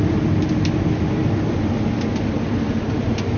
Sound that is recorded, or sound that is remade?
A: recorded